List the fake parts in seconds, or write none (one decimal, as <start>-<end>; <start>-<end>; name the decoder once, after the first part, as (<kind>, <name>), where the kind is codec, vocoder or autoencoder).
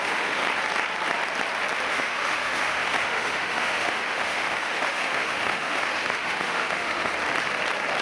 0.0-0.4 (autoencoder, DAC-VAE); 1.9-7.1